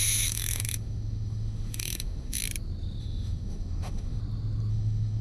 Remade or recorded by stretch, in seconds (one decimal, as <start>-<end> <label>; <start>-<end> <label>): 0.0-2.4 remade; 2.4-3.0 recorded; 3.0-4.2 remade; 4.2-4.7 recorded; 4.7-5.2 remade